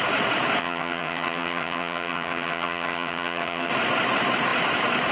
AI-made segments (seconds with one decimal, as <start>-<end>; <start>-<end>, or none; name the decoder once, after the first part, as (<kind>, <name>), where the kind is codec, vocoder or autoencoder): 0.6-3.7 (vocoder, HiFi-GAN)

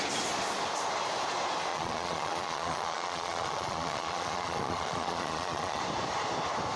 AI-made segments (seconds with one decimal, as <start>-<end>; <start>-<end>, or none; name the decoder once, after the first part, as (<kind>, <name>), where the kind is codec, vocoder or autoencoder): 1.7-5.8 (vocoder, Vocos)

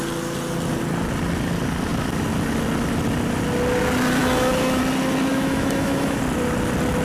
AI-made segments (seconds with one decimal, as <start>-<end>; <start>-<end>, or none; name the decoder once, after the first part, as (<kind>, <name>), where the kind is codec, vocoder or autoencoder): 4.2-4.8 (autoencoder, DAC-VAE); 5.3-6.2